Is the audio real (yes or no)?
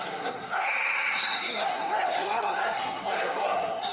no